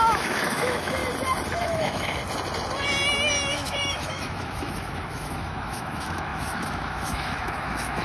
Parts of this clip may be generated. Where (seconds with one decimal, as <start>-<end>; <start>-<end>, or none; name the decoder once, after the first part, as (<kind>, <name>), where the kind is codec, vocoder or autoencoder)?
0.0-1.0 (autoencoder, DAC-VAE); 1.6-2.2; 3.5-8.0